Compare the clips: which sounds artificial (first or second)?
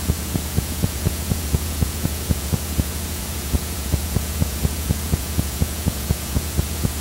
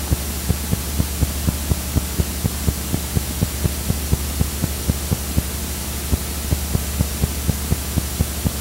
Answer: first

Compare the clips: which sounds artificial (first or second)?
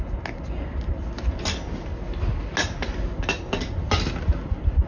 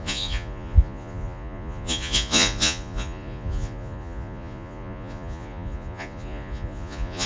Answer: second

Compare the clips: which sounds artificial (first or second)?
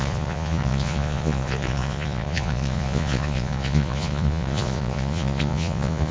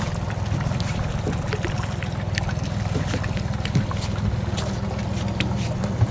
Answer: first